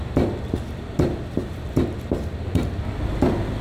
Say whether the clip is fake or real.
real